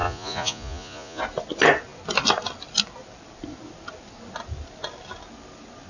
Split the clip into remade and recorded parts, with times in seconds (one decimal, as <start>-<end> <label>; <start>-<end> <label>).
0.0-1.2 remade; 1.2-5.9 recorded